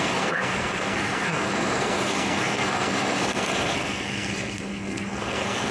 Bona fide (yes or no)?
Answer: no